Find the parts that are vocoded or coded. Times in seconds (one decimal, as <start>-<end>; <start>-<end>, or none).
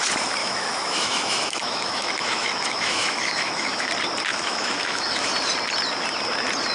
0.4-3.9; 4.3-5.3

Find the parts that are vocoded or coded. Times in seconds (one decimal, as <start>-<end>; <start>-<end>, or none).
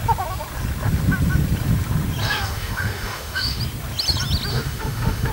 2.2-3.6; 4.5-5.3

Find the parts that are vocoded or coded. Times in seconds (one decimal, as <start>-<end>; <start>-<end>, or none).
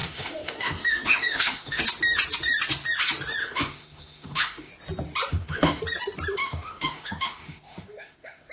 0.0-1.8; 3.4-4.7; 5.3-5.8; 6.4-8.5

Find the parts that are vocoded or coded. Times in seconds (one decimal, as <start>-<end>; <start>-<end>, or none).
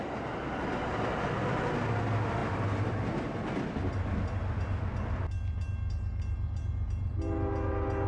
none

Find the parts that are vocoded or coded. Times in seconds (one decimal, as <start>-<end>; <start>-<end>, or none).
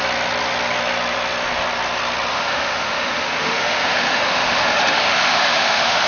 2.3-6.1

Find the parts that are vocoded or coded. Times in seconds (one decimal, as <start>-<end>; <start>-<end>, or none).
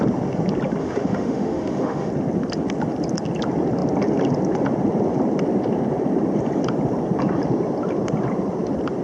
0.8-2.1